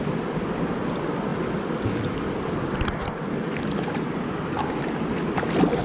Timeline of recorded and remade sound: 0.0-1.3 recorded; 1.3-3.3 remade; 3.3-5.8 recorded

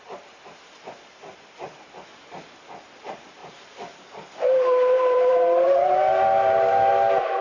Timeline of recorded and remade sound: 0.0-3.4 recorded; 3.4-6.9 remade; 6.9-7.4 recorded

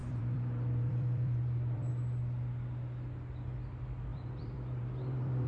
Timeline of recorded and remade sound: 0.0-1.9 remade; 1.9-4.1 recorded; 4.1-5.5 remade